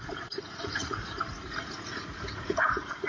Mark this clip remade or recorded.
remade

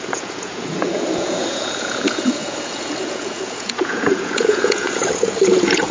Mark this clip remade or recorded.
remade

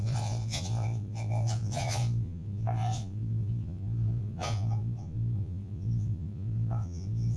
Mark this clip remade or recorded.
remade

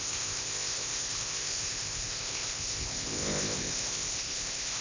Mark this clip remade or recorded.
remade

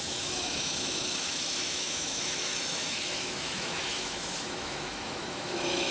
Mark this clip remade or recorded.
remade